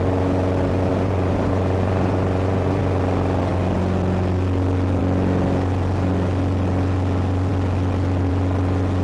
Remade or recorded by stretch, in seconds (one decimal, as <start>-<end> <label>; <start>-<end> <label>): 0.0-0.9 recorded; 0.9-2.8 remade; 2.8-9.0 recorded